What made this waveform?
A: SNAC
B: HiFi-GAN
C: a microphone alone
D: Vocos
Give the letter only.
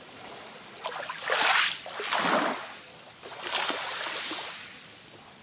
C